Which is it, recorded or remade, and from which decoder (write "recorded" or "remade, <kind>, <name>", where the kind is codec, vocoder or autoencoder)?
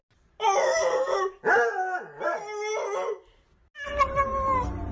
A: recorded